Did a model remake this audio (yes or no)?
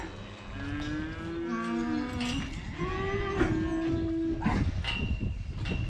no